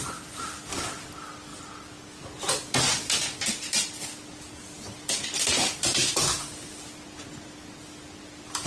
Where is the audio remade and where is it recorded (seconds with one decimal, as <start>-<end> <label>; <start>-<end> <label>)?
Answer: 0.0-8.7 recorded